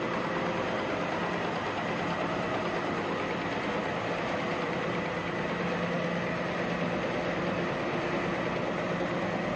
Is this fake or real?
real